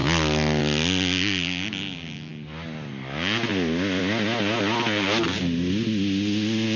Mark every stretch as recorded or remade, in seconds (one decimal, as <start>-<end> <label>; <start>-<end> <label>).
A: 0.0-6.8 recorded